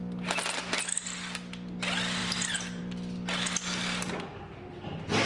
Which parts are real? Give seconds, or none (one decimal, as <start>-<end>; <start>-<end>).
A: 0.0-5.3